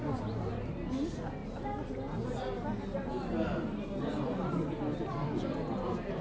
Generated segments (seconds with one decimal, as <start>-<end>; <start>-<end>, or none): none